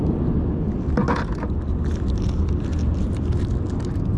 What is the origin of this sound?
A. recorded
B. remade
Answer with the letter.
A